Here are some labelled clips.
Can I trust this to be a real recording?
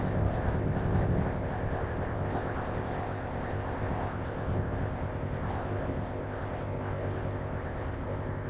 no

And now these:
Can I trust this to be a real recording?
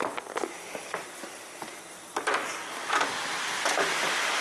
yes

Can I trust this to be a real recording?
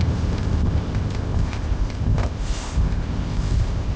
no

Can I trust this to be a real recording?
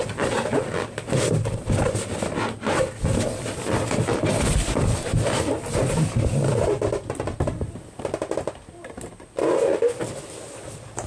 yes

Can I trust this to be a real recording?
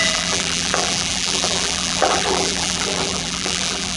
no